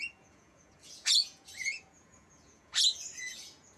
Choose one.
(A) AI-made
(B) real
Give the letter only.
A